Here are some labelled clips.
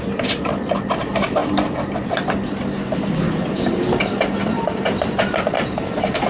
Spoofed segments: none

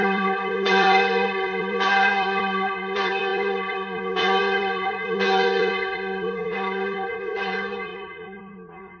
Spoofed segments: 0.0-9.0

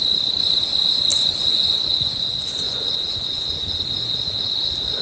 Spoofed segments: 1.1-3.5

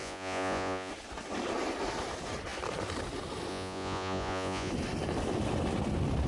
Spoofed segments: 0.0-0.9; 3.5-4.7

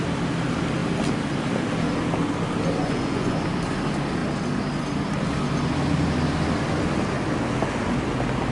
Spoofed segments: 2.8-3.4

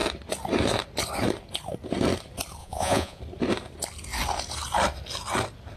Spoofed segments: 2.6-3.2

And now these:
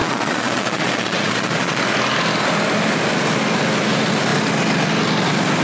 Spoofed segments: 0.0-1.8